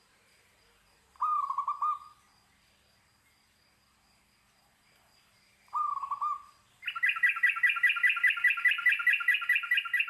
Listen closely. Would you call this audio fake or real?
real